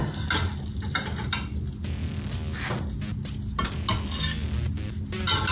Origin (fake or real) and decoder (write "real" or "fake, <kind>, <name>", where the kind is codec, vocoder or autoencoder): real